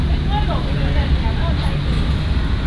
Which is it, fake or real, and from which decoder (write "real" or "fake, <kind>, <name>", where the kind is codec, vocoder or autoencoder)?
real